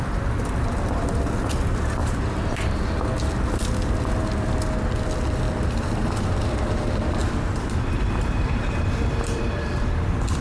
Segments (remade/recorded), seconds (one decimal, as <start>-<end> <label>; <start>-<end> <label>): 0.0-2.0 recorded; 2.0-2.8 remade; 2.8-7.2 recorded; 7.2-9.3 remade; 9.3-10.4 recorded